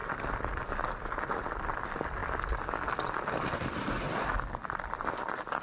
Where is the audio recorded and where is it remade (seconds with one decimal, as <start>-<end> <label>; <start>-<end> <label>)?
0.0-5.6 recorded